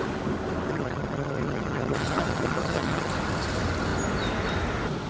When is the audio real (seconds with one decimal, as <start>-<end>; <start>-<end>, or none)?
0.0-0.7; 3.1-5.1